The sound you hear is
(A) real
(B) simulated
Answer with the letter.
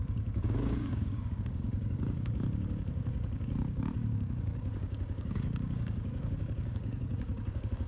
B